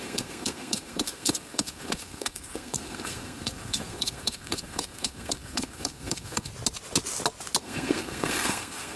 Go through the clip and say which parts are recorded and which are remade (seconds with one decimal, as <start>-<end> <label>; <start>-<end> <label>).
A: 0.0-6.5 remade; 6.5-7.6 recorded; 7.6-9.0 remade